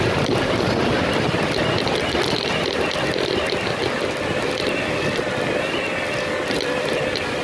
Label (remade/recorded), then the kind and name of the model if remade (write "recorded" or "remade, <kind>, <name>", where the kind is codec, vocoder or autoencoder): recorded